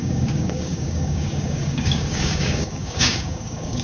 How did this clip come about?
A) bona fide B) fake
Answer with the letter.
B